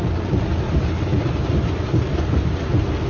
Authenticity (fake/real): real